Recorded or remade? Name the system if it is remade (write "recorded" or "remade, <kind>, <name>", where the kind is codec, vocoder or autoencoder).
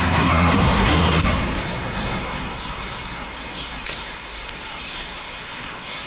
remade, codec, SNAC